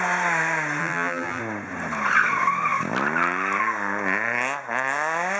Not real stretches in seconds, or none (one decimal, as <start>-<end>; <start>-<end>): 0.8-1.4